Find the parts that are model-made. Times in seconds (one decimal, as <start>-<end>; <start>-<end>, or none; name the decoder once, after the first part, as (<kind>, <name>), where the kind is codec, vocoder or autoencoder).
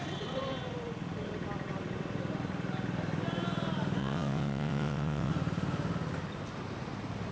4.0-5.3 (vocoder, WaveNeXt)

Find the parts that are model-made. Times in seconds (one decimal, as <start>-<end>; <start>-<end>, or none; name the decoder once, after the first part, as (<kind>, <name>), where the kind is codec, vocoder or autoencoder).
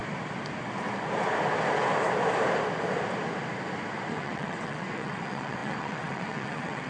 4.1-6.9 (vocoder, WaveNeXt)